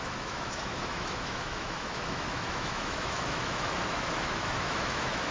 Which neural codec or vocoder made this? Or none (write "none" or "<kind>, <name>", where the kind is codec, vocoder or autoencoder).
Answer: autoencoder, DAC-VAE